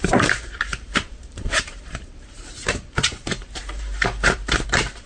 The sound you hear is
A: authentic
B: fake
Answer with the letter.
B